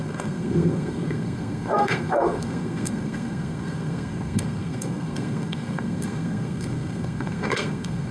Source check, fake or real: fake